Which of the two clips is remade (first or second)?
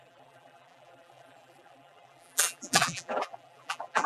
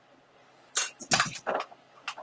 first